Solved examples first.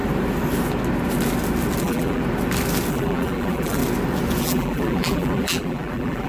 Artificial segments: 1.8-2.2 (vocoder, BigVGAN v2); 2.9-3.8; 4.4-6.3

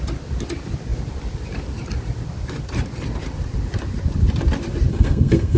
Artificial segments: 4.9-5.6 (codec, SNAC)

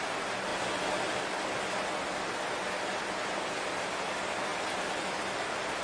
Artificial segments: none

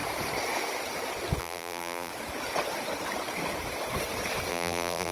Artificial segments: 1.4-2.1 (vocoder, BigVGAN v2); 4.5-5.1

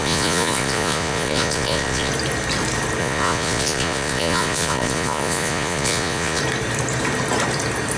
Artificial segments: 0.0-2.1 (vocoder, Vocos); 3.0-6.4

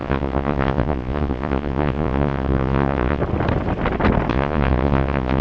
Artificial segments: 0.0-3.2 (vocoder, Vocos); 4.3-5.4